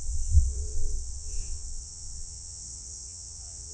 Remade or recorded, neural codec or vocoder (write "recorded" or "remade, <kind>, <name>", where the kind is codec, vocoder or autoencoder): remade, vocoder, WaveNeXt